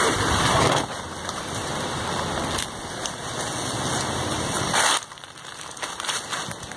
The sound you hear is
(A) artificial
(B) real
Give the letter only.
B